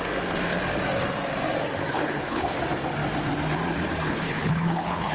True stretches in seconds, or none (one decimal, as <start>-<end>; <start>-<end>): 0.0-1.9; 2.6-4.1